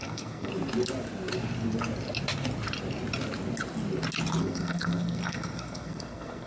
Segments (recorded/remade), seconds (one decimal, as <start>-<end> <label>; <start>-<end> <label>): 0.0-0.5 remade; 0.5-4.4 recorded; 4.4-6.5 remade